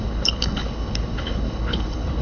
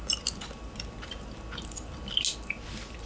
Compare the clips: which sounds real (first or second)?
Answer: second